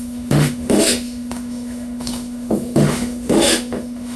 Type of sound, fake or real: fake